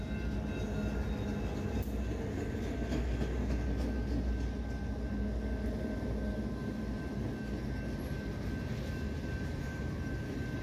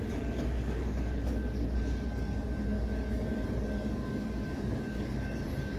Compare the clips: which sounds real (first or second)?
first